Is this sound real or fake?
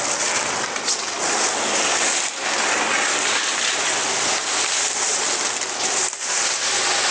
real